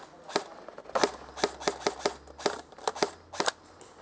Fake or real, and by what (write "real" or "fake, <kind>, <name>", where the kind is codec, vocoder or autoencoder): real